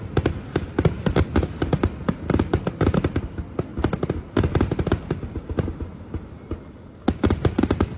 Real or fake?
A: real